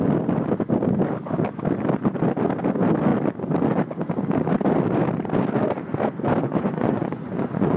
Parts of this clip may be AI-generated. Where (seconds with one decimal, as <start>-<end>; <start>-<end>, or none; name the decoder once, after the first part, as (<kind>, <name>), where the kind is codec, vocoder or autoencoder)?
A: 6.4-7.8 (vocoder, Vocos)

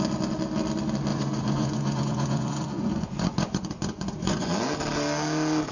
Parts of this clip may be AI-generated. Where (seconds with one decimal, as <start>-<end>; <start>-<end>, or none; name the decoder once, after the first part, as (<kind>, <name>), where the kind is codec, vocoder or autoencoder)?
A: 1.1-4.5 (vocoder, Vocos)

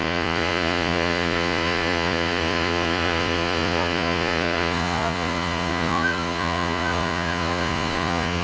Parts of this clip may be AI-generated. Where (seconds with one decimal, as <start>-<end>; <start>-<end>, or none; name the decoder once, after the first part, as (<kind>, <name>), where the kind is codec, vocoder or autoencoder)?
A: 0.0-8.4 (vocoder, Vocos)

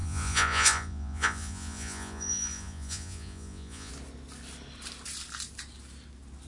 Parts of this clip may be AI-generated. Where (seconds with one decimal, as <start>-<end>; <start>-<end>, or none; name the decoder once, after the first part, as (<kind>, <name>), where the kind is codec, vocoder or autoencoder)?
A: 0.0-3.9 (vocoder, Vocos)